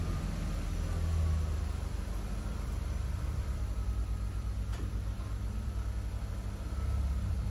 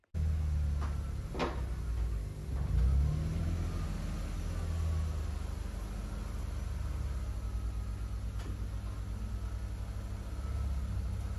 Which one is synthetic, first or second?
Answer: first